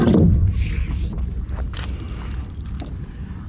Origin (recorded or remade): recorded